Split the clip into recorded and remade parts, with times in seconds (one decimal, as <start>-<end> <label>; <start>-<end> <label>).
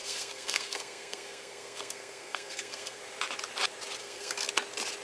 0.0-3.0 remade; 3.0-4.0 recorded; 4.0-4.5 remade; 4.5-5.0 recorded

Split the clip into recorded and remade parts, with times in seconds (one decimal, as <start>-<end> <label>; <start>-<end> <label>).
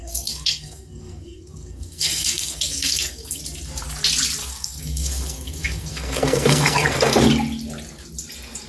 0.0-3.4 remade; 3.4-4.4 recorded; 4.4-7.2 remade; 7.2-8.7 recorded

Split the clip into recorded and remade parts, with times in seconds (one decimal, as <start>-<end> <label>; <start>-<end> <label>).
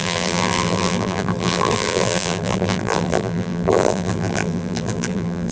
0.0-5.5 remade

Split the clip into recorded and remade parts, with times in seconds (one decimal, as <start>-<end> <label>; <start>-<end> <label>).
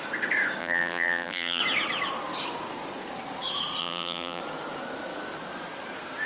0.0-0.6 recorded; 0.6-1.6 remade; 1.6-3.8 recorded; 3.8-4.4 remade; 4.4-6.2 recorded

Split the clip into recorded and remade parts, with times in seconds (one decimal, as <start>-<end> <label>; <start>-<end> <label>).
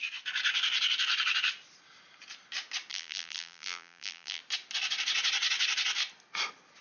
0.0-2.9 recorded; 2.9-4.4 remade; 4.4-6.8 recorded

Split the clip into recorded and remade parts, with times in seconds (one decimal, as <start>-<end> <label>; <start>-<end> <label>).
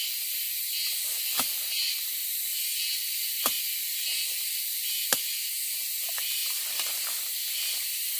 0.0-6.4 recorded; 6.4-7.2 remade; 7.2-8.2 recorded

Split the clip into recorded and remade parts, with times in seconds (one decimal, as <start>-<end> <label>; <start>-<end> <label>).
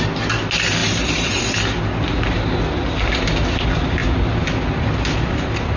0.0-0.8 recorded; 0.8-1.4 remade; 1.4-5.8 recorded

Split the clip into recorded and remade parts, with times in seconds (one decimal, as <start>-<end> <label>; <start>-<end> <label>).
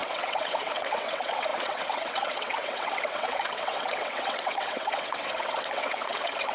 0.0-6.5 remade